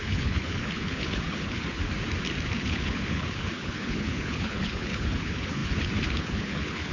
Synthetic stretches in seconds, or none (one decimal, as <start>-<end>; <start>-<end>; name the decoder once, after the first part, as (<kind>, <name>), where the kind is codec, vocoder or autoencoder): 0.0-1.8 (codec, HILCodec); 2.6-6.9